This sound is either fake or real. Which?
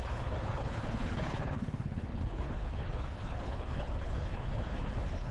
fake